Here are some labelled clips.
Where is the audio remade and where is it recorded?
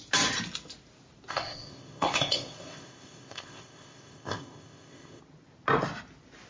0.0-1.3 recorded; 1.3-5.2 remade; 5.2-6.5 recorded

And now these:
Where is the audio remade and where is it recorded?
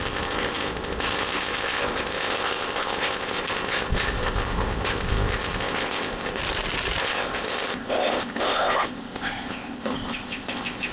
0.0-6.4 remade; 6.4-7.0 recorded; 7.0-10.9 remade